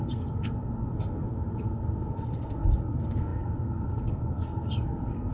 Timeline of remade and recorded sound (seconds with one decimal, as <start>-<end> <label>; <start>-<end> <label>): 0.0-5.3 remade